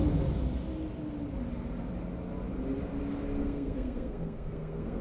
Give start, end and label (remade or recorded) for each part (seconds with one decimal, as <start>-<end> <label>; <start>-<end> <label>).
0.0-3.4 recorded; 3.4-5.0 remade